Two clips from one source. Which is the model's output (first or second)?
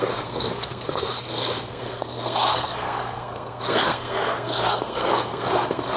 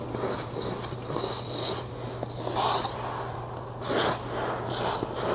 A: first